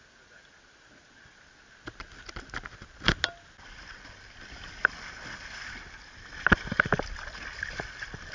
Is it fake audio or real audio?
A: real